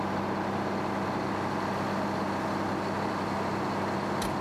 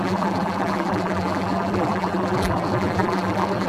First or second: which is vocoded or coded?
second